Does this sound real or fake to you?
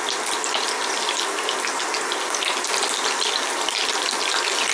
real